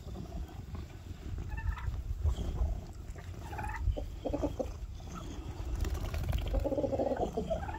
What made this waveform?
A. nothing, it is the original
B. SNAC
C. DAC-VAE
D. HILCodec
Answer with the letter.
A